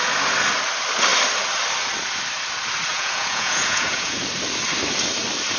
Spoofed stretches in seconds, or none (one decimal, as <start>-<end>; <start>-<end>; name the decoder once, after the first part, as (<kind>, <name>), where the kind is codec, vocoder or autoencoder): 2.9-4.2 (vocoder, Vocos)